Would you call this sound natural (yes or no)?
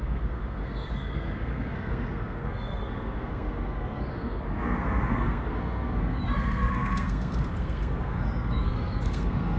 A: no